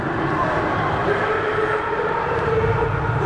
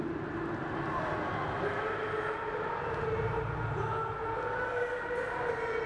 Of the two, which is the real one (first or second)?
second